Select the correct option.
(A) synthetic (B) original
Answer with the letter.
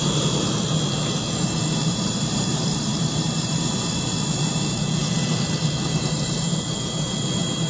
A